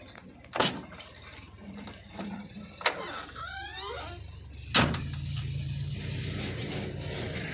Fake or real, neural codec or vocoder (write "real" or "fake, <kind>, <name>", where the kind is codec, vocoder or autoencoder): real